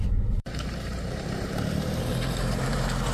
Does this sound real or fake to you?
fake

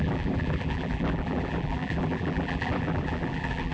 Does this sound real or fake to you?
fake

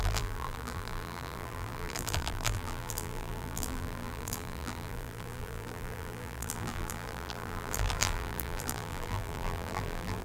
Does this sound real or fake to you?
fake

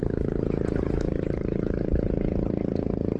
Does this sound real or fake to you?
fake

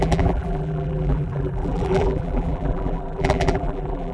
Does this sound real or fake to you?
fake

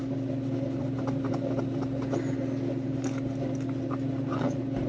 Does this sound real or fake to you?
fake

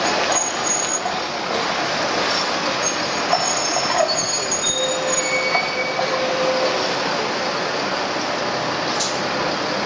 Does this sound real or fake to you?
real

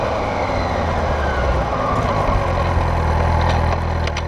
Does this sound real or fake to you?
real